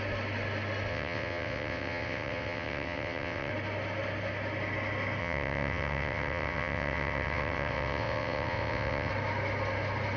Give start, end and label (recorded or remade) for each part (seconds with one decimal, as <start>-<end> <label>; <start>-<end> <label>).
0.0-0.9 recorded; 0.9-3.5 remade; 3.5-5.2 recorded; 5.2-9.1 remade; 9.1-10.2 recorded